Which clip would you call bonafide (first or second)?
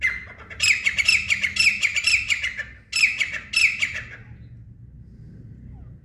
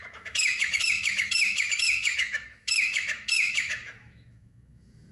first